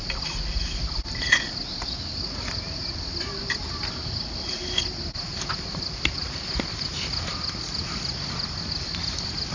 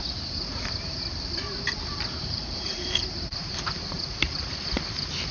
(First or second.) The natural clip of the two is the first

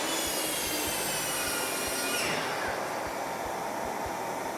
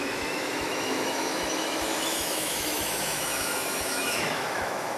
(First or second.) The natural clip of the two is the first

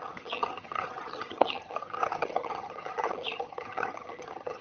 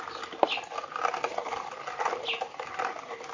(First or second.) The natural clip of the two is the second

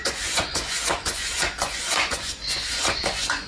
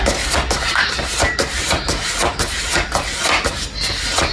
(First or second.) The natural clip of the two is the second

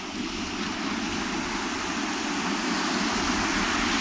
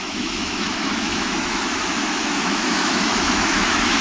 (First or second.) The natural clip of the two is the first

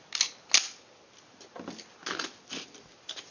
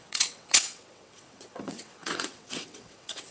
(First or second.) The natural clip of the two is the first